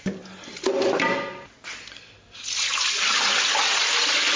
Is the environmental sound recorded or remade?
recorded